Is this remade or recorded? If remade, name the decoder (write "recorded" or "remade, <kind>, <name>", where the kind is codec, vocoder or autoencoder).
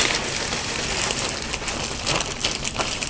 recorded